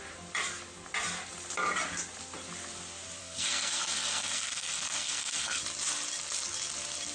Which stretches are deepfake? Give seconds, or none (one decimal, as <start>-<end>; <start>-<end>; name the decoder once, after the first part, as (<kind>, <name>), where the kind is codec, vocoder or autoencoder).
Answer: 3.2-5.6 (codec, SNAC)